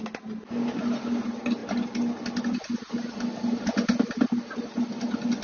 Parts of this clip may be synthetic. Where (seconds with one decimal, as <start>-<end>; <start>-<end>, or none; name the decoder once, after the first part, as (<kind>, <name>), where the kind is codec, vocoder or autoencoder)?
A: none